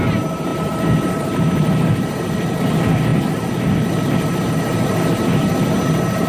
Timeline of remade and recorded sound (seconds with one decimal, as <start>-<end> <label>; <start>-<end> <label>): 0.0-6.3 recorded